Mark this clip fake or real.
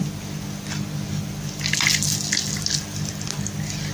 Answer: real